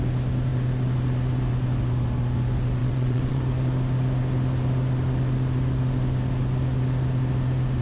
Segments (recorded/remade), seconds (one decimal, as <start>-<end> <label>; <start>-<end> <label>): 0.0-2.8 recorded; 2.8-3.4 remade; 3.4-7.8 recorded

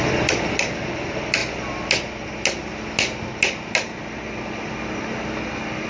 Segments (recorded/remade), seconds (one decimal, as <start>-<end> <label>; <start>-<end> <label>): 0.0-5.9 recorded

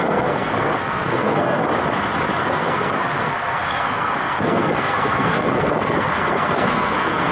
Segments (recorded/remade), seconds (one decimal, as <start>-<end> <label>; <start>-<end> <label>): 0.0-1.6 remade; 1.6-2.4 recorded; 2.4-7.3 remade